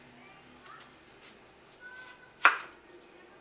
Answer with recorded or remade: recorded